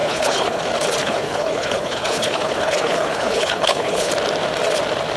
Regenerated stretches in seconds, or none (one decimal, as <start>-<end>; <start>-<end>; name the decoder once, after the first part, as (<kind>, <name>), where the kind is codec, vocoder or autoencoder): 0.0-0.6 (codec, HILCodec); 1.0-4.1